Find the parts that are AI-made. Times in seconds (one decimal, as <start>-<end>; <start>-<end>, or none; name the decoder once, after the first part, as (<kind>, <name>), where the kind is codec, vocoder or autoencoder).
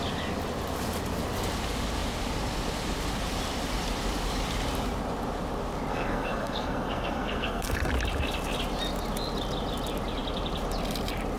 5.9-7.9 (codec, SNAC)